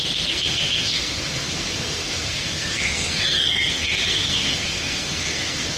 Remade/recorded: remade